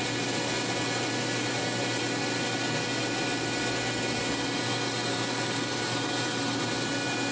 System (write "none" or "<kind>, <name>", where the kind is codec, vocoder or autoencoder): none